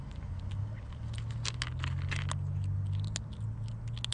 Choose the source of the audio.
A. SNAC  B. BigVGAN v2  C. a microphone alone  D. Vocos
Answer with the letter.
C